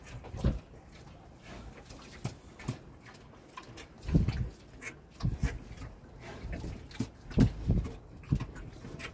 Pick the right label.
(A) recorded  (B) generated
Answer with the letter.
A